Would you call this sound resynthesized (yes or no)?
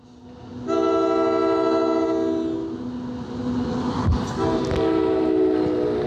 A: no